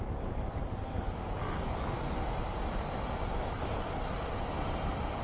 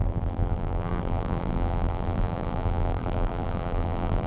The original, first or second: first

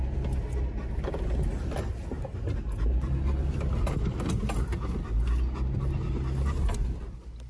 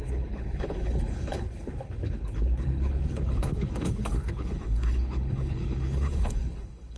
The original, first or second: first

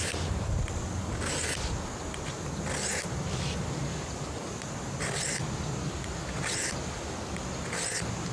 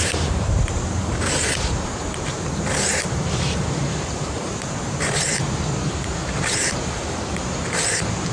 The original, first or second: first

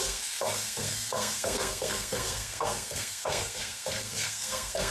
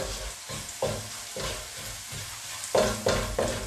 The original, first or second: second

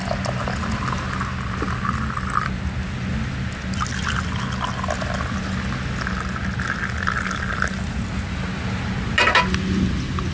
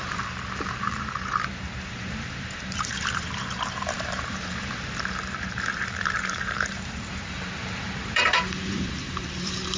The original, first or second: first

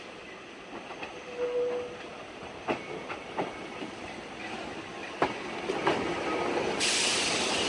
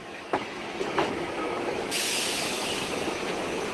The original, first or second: first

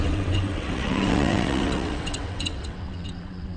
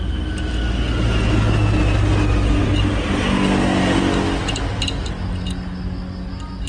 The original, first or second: second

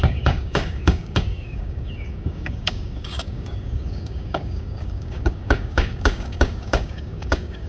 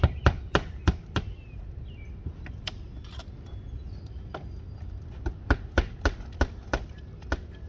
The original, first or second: second